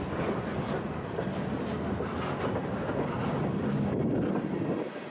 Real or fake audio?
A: real